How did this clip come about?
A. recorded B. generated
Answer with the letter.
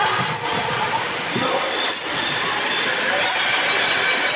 A